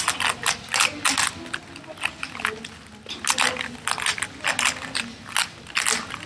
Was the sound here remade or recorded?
recorded